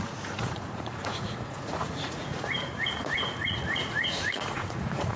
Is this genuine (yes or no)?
no